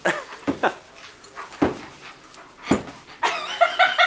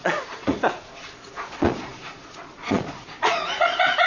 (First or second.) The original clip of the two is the first